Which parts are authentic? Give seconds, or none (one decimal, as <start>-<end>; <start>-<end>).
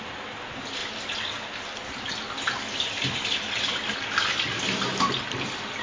0.0-5.8